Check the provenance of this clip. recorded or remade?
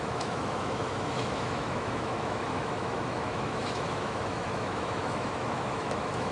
remade